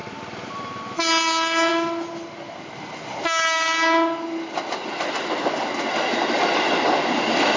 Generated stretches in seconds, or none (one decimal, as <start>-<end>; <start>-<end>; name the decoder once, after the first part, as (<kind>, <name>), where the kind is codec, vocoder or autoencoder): none